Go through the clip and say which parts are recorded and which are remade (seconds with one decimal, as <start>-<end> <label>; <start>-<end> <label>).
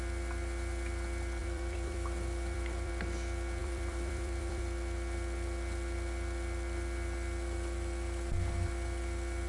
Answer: 0.0-1.4 recorded; 1.4-2.9 remade; 2.9-3.6 recorded; 3.6-4.6 remade; 4.6-9.5 recorded